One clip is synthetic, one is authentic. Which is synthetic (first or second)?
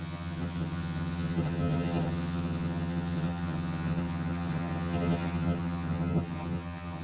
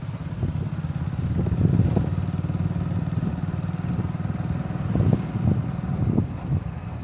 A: first